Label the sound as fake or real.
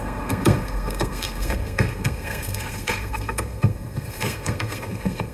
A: fake